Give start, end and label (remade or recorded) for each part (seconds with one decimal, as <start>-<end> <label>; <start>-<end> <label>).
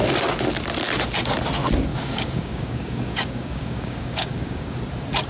0.0-1.9 recorded; 1.9-4.8 remade; 4.8-5.3 recorded